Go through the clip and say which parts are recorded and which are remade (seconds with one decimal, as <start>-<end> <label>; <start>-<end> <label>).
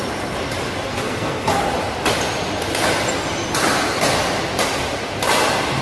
0.0-0.9 recorded; 0.9-1.7 remade; 1.7-5.8 recorded